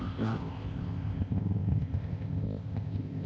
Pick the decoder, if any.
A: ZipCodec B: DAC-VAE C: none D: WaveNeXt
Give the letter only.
A